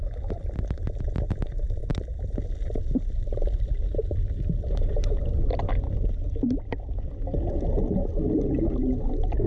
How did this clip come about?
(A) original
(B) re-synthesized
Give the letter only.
A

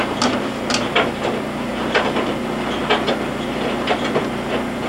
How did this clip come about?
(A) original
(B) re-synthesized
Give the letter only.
A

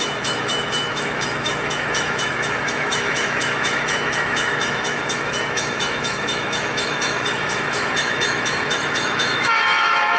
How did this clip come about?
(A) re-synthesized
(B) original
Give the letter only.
A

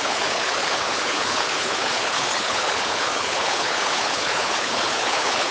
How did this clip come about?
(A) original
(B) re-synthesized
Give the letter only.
B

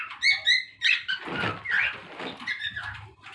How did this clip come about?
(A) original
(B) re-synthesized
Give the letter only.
A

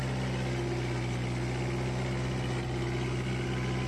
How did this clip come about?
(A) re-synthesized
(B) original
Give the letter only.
B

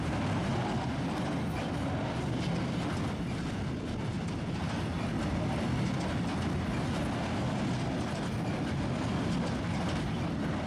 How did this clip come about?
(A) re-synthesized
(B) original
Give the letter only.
B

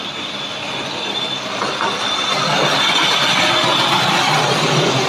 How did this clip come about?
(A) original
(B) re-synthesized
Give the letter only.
A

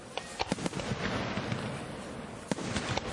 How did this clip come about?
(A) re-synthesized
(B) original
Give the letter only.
B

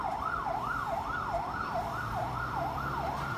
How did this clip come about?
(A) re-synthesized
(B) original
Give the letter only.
A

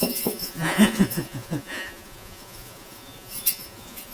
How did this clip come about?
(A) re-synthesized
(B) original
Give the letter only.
A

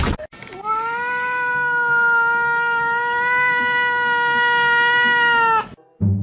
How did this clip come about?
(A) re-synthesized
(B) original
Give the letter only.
B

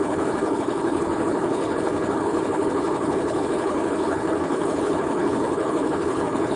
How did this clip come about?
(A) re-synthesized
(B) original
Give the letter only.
A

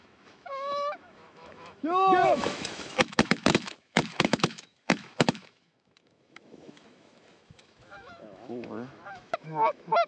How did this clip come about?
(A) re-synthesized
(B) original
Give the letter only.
A